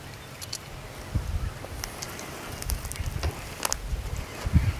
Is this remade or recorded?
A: recorded